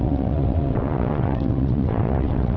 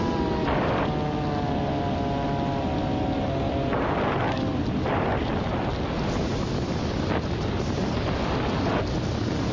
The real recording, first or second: second